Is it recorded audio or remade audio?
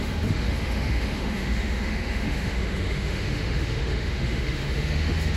remade